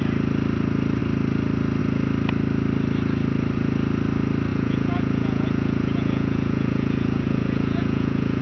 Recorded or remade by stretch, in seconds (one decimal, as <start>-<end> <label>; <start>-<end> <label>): 0.0-4.5 recorded; 4.5-8.4 remade